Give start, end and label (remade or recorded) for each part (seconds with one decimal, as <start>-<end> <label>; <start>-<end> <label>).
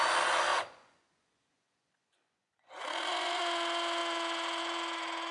0.0-0.5 recorded; 0.5-3.4 remade; 3.4-5.3 recorded